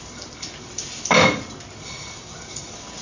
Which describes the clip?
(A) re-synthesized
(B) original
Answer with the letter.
B